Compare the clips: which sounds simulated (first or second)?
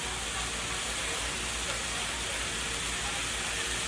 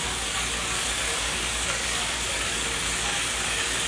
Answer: second